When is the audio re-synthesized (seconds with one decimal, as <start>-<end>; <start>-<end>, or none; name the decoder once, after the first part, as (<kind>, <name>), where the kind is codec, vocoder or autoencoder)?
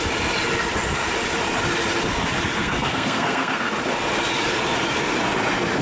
2.6-3.7 (codec, SNAC)